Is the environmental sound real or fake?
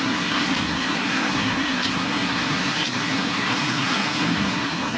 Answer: fake